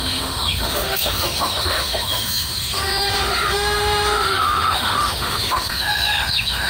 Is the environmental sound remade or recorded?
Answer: remade